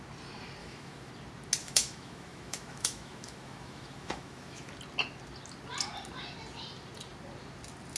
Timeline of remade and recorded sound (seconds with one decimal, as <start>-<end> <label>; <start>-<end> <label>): 0.0-0.6 recorded; 0.6-1.1 remade; 1.1-1.6 recorded; 1.6-4.7 remade; 4.7-8.0 recorded